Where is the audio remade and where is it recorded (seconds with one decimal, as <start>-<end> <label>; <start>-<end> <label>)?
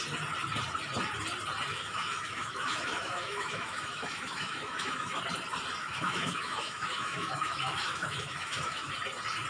0.0-1.7 recorded; 1.7-5.2 remade; 5.2-5.8 recorded; 5.8-8.9 remade; 8.9-9.5 recorded